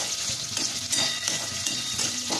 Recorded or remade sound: remade